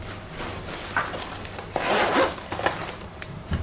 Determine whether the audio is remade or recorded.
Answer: remade